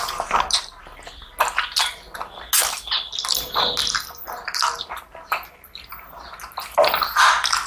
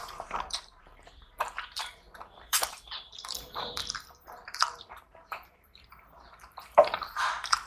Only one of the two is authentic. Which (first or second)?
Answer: first